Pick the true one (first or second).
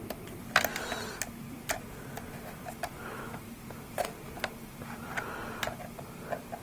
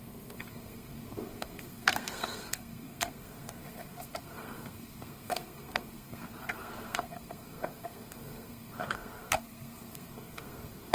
first